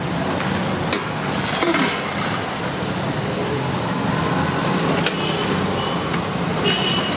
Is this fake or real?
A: real